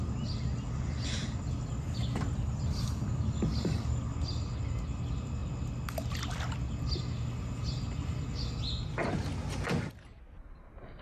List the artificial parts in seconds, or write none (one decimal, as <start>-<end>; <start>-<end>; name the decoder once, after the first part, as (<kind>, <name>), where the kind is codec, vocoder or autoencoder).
none